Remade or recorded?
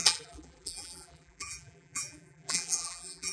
remade